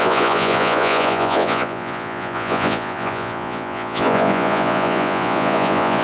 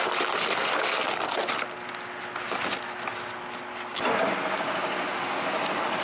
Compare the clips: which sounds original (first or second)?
second